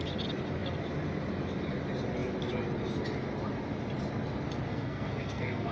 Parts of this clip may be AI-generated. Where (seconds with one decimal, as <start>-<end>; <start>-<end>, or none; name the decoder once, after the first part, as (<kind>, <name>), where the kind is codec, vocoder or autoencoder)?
4.7-5.7 (codec, SNAC)